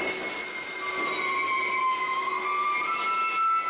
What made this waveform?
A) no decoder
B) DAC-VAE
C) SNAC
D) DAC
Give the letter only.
A